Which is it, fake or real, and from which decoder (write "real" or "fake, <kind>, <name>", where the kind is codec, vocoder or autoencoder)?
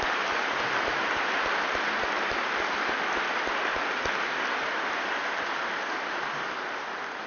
real